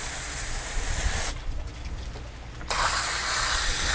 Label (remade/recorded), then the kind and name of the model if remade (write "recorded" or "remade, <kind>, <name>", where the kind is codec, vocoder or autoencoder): recorded